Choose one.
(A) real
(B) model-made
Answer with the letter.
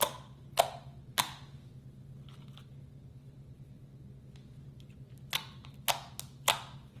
A